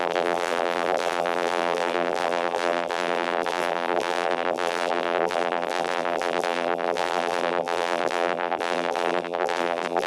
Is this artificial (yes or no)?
yes